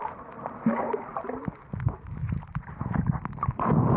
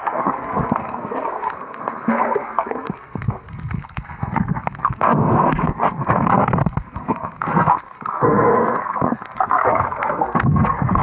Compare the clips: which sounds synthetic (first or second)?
second